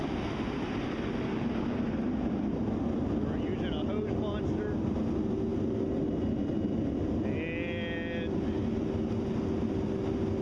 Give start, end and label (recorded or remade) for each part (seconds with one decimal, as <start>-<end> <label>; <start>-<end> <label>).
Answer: 0.0-10.4 recorded